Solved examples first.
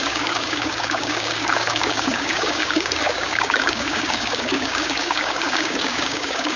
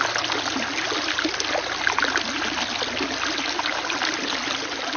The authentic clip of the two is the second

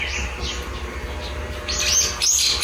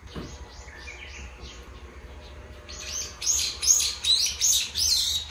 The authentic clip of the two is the first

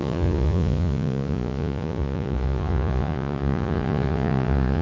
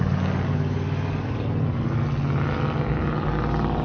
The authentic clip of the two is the second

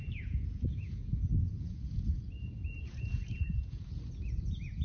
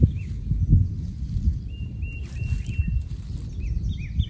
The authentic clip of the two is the second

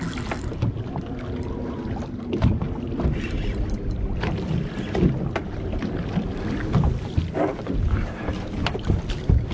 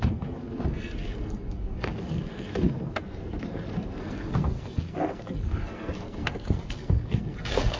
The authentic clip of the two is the first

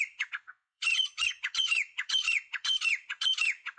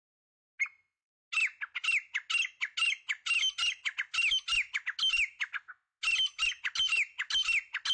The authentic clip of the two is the second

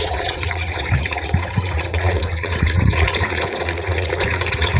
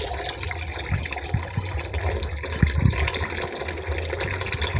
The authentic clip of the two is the second